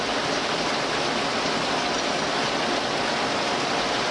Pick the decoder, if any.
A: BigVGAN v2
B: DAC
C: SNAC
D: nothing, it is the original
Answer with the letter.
D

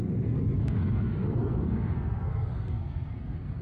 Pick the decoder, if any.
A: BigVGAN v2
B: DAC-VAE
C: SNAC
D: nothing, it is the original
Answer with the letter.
C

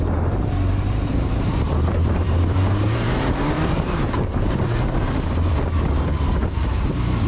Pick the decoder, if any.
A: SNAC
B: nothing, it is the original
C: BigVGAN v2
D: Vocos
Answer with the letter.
C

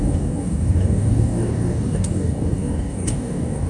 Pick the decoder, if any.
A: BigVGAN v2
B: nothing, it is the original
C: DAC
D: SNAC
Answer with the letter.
C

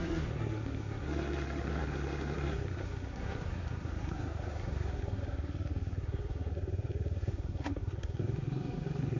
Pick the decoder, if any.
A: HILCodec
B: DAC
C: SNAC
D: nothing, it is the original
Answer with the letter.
C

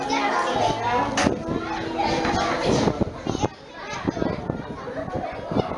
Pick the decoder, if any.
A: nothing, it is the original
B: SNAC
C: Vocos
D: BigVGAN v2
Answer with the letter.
A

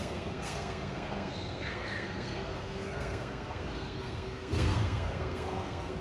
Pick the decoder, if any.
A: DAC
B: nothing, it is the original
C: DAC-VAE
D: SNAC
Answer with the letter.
D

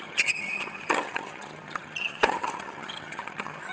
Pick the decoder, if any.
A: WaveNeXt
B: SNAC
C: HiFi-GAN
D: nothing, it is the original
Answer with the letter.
C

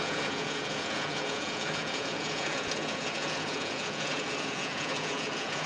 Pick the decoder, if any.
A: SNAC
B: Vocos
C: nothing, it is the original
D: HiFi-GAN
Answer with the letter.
B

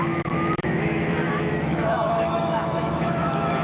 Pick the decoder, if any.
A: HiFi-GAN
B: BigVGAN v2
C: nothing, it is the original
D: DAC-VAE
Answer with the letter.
D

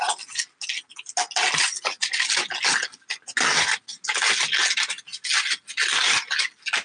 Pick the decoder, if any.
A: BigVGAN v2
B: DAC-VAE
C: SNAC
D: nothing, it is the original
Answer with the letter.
D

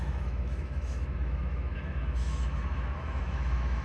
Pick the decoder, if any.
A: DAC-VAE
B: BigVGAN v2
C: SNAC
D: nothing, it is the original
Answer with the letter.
A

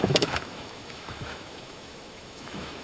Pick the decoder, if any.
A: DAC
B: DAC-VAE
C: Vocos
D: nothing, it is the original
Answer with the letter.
B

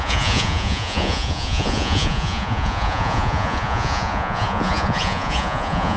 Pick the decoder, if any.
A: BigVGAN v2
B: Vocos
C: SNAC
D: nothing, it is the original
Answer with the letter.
B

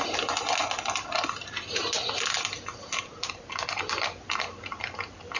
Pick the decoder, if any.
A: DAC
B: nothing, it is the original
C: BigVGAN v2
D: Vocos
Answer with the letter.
B